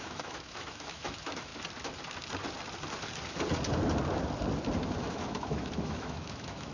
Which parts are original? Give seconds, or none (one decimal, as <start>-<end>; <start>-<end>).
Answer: 1.5-4.9

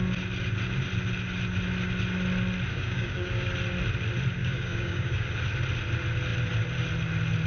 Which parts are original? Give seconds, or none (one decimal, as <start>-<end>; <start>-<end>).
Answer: 0.0-2.7; 3.5-4.4; 5.3-7.5

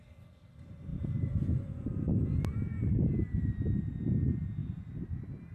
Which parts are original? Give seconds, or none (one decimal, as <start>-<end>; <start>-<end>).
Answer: 0.0-5.5

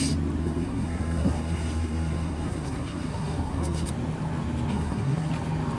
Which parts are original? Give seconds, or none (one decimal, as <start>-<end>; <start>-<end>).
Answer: 0.0-0.4; 3.9-4.7; 5.3-5.8

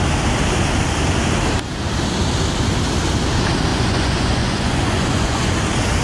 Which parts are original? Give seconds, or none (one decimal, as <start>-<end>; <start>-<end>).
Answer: 0.0-3.7; 5.5-6.0